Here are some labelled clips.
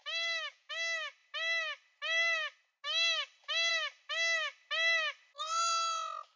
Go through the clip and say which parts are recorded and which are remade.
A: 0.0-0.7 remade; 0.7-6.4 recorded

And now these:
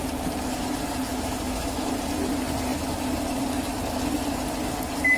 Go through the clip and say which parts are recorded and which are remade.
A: 0.0-1.1 recorded; 1.1-1.9 remade; 1.9-5.2 recorded

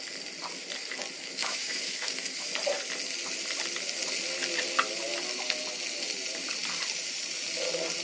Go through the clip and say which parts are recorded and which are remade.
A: 0.0-1.4 recorded; 1.4-2.5 remade; 2.5-8.0 recorded

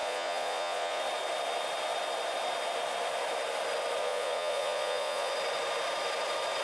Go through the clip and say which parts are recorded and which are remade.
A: 0.0-1.0 remade; 1.0-4.0 recorded; 4.0-5.3 remade; 5.3-6.6 recorded

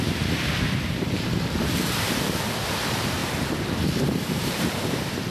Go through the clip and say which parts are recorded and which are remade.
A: 0.0-3.2 remade; 3.2-4.0 recorded; 4.0-5.3 remade

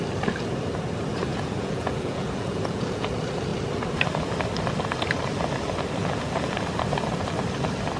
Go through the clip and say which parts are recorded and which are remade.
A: 0.0-1.3 recorded; 1.3-3.1 remade; 3.1-6.0 recorded; 6.0-6.6 remade; 6.6-8.0 recorded